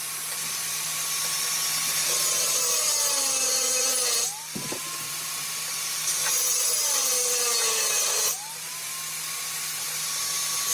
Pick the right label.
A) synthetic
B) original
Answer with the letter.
B